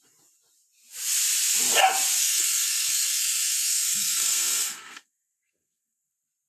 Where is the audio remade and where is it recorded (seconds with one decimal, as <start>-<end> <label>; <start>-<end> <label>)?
0.0-2.2 recorded; 2.2-6.1 remade; 6.1-6.5 recorded